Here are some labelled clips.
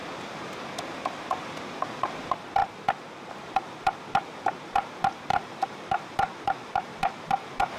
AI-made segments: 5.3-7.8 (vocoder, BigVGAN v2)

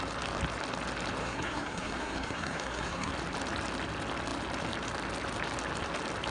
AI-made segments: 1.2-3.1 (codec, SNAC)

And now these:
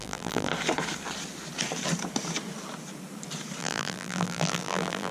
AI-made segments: 0.0-0.5 (vocoder, BigVGAN v2); 3.6-5.1

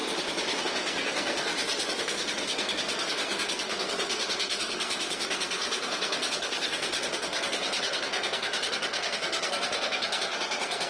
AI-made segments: 0.6-1.5 (codec, SNAC); 2.0-10.9

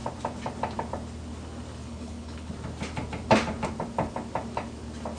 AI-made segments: 1.8-2.5 (codec, HILCodec)

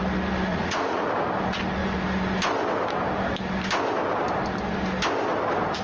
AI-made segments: 0.5-1.1 (vocoder, Vocos)

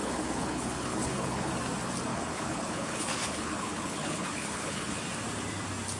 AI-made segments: 0.0-1.5 (codec, HILCodec); 2.1-5.0

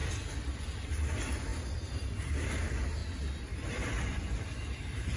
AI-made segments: 0.0-1.5 (vocoder, BigVGAN v2); 2.6-3.0; 4.0-5.2